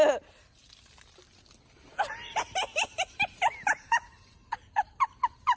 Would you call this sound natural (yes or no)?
yes